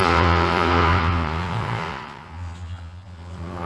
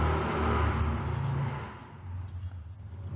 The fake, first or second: first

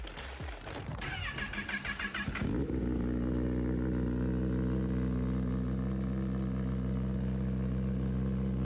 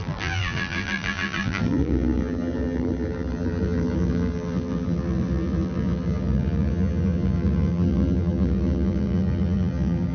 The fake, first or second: second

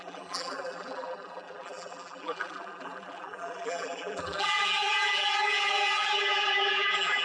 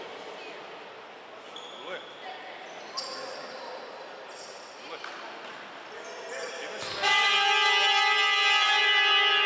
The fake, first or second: first